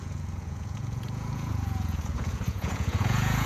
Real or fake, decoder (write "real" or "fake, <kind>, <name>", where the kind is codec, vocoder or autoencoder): fake, vocoder, Vocos